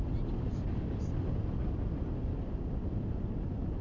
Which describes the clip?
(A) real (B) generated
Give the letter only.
A